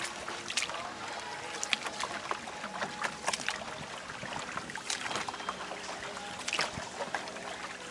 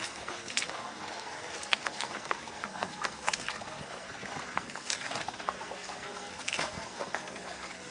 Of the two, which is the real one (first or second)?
first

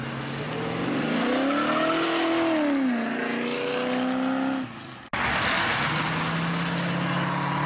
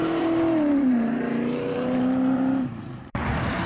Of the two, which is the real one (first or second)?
first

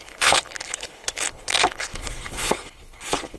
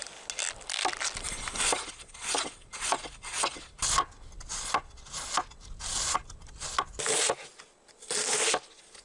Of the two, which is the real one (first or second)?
second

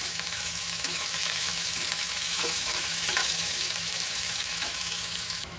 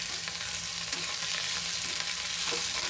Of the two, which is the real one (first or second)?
second